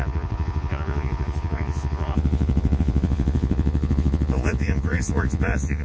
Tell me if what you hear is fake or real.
fake